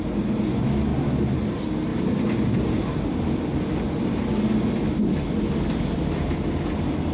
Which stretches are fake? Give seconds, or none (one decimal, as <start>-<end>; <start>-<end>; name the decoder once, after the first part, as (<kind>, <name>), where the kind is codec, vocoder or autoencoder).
none